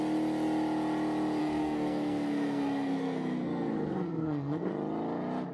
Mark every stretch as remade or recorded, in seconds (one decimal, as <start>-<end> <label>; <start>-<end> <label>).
0.0-1.4 recorded; 1.4-4.7 remade; 4.7-5.5 recorded

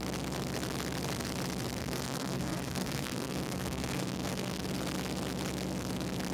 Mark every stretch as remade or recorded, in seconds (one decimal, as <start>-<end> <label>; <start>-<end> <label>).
0.0-1.8 recorded; 1.8-4.6 remade; 4.6-6.3 recorded

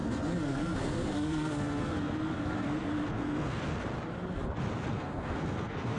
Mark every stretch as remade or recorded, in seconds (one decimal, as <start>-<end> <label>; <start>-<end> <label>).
0.0-3.6 remade; 3.6-4.9 recorded; 4.9-6.0 remade

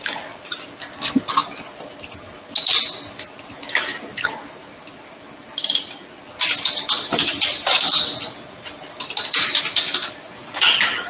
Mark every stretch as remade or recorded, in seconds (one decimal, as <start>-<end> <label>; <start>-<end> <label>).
0.0-11.1 recorded